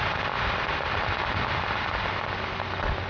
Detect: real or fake real